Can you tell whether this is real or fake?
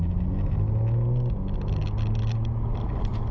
real